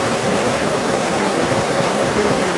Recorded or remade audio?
remade